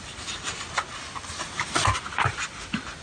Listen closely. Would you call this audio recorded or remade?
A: recorded